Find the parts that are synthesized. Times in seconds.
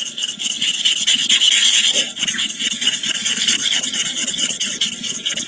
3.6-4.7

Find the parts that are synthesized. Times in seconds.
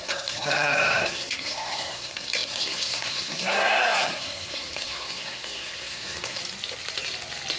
0.0-6.4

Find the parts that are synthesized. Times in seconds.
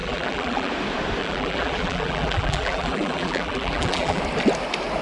0.0-0.7; 1.2-4.2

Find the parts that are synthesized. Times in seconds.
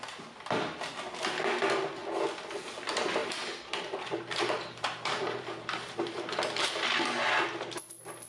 3.2-6.4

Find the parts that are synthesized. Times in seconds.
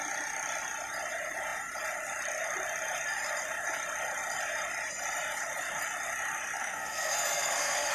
6.6-7.9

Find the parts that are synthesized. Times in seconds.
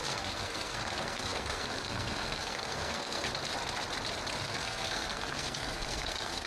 0.0-3.3; 4.4-6.5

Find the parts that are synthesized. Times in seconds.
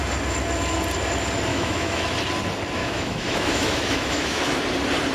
1.5-2.1; 2.8-4.6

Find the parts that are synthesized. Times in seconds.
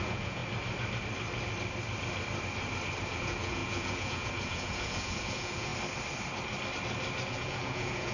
0.0-0.4; 3.0-5.7; 7.3-8.1